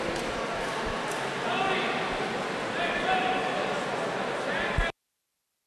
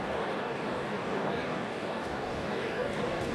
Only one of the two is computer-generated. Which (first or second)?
second